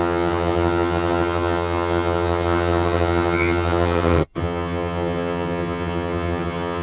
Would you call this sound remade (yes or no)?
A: yes